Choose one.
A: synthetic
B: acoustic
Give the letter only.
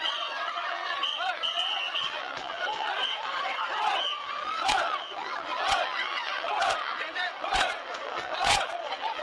A